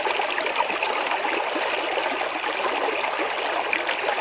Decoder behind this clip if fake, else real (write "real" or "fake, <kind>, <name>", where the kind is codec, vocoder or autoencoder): real